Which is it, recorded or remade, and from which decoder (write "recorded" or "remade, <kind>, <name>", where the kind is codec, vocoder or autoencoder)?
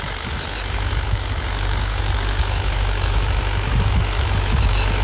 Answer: remade, autoencoder, DAC-VAE